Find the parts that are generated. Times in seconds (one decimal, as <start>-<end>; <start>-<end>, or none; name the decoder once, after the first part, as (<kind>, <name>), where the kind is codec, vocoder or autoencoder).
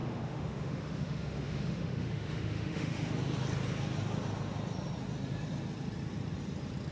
0.0-3.1 (autoencoder, DAC-VAE)